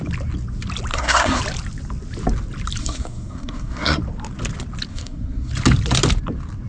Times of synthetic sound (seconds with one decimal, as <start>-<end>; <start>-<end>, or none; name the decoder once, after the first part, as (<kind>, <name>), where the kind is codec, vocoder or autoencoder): 0.9-1.4 (codec, SNAC); 2.8-4.0; 4.9-5.5